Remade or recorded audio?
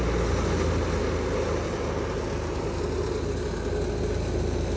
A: recorded